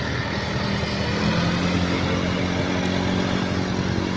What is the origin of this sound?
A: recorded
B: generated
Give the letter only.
A